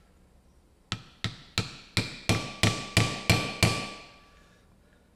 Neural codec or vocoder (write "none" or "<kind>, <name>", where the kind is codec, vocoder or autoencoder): none